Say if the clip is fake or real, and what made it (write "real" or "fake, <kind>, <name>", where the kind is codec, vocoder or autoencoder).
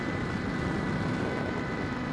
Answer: real